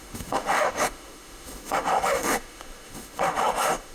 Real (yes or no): no